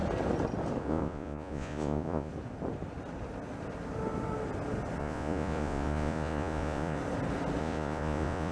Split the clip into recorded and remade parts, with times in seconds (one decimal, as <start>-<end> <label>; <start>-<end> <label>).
0.0-0.8 recorded; 0.8-2.3 remade; 2.3-5.0 recorded; 5.0-7.0 remade; 7.0-7.6 recorded; 7.6-8.5 remade